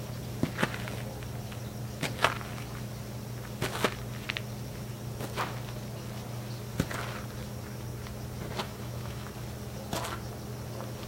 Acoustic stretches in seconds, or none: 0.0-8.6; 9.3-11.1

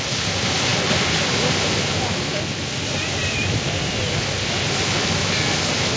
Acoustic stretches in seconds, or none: 0.0-6.0

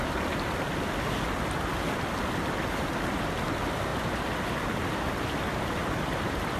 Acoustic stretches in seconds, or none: 0.0-6.6

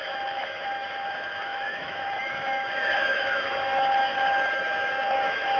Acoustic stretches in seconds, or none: none

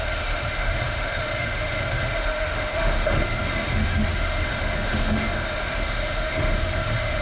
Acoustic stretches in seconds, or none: none

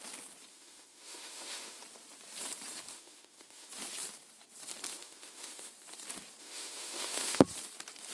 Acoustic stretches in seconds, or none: 0.0-0.5; 1.8-2.9; 3.7-4.9; 5.7-6.4; 7.4-8.1

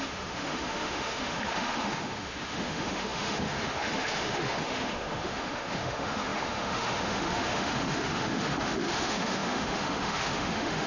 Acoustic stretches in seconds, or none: none